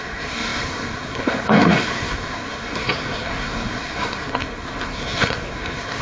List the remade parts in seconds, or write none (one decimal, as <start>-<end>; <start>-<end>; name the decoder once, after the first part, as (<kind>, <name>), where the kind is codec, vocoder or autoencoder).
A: 0.0-6.0 (codec, SNAC)